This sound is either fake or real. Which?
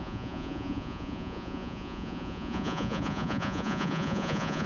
fake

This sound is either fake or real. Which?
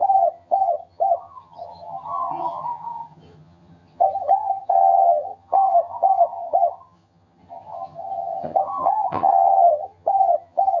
fake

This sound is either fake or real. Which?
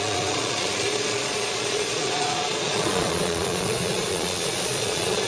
fake